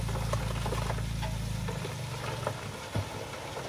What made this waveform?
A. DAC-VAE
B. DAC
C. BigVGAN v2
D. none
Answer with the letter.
D